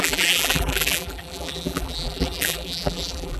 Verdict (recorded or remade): remade